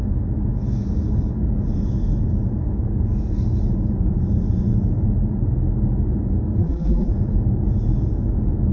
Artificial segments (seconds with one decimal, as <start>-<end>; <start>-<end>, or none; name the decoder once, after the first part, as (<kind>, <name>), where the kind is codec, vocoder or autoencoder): 6.6-7.1 (vocoder, BigVGAN v2)